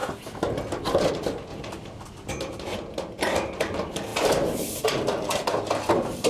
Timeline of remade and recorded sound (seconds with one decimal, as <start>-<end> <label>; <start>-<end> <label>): 0.0-1.5 recorded; 1.5-2.3 remade; 2.3-4.1 recorded; 4.1-5.6 remade; 5.6-6.3 recorded